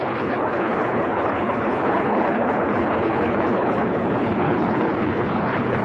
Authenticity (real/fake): fake